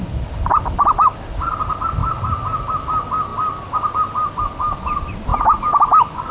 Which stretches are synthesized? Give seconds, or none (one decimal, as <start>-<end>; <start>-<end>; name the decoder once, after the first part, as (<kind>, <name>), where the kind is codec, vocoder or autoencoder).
none